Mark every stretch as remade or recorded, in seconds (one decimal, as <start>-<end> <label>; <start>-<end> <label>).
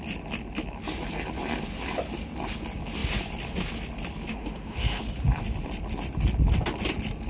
0.0-4.3 recorded; 4.3-5.0 remade; 5.0-7.3 recorded